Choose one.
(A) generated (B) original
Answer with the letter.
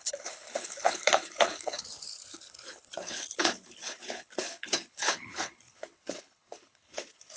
A